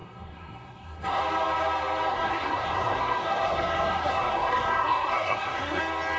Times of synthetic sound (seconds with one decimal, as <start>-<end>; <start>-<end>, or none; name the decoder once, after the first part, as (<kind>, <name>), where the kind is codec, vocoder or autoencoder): 0.0-1.2 (codec, SNAC); 2.1-5.8